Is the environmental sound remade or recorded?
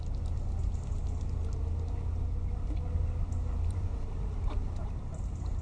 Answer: recorded